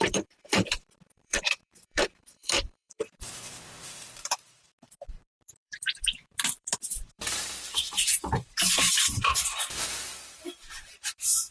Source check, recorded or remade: remade